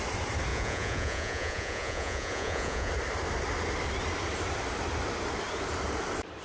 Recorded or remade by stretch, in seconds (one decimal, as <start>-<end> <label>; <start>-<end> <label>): 0.0-0.5 recorded; 0.5-2.9 remade; 2.9-6.4 recorded